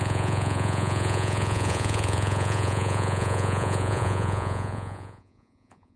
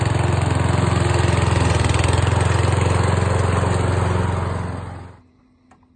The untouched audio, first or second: second